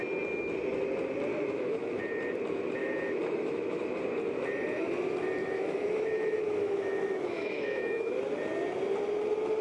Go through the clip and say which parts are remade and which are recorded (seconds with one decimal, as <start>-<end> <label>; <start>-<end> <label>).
0.0-1.3 recorded; 1.3-2.0 remade; 2.0-2.8 recorded; 2.8-4.0 remade; 4.0-5.4 recorded; 5.4-8.1 remade; 8.1-9.6 recorded